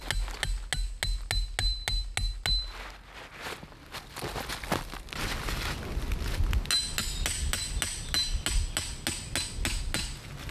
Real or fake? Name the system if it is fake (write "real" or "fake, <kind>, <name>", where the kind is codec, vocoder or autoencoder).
real